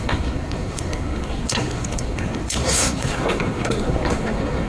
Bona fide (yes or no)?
no